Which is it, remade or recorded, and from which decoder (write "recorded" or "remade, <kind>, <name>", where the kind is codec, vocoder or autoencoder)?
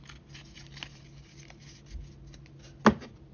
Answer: recorded